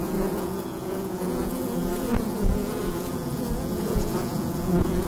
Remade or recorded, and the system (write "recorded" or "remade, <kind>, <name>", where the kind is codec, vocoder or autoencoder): remade, vocoder, Vocos